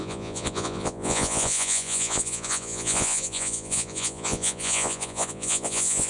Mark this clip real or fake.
fake